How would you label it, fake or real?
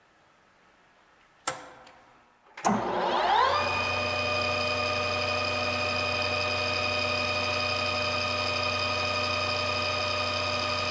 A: real